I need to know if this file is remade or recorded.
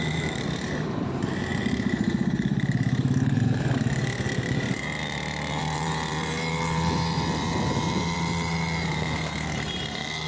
remade